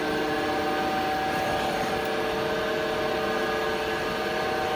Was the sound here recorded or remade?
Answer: recorded